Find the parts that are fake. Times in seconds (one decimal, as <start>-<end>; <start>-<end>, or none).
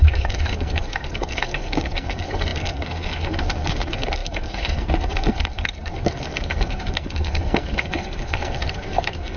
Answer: 0.0-9.4